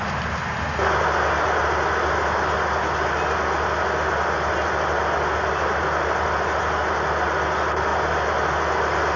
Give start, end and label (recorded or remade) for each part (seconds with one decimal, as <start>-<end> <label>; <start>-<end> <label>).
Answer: 0.0-9.2 recorded